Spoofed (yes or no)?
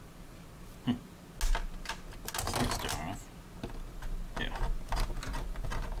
no